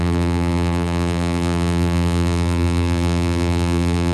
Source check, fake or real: fake